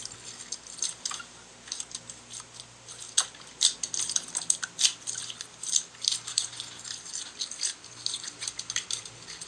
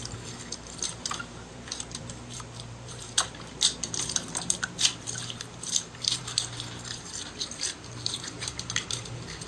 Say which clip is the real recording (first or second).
first